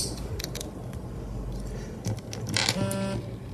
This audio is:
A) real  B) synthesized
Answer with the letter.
A